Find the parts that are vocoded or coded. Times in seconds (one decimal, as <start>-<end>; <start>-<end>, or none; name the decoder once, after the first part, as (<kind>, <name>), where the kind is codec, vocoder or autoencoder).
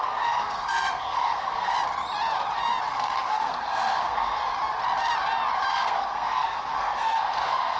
0.0-1.7 (codec, SNAC); 2.9-4.4; 5.7-7.8